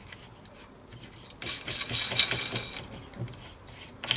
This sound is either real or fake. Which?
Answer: real